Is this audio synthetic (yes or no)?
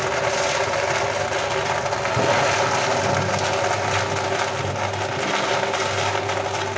no